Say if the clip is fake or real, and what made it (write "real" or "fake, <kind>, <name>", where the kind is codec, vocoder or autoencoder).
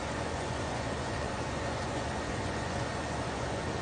fake, vocoder, Vocos